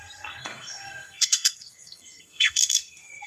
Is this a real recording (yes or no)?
no